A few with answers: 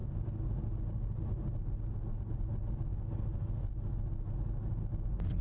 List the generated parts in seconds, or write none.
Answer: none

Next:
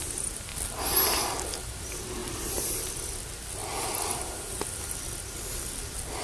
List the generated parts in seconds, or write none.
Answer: none